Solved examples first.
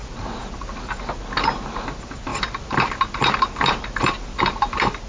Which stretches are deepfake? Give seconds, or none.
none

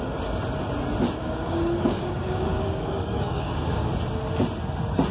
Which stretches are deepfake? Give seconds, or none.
1.2-3.9

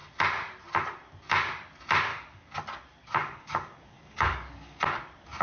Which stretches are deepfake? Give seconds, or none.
2.1-2.6; 3.2-4.8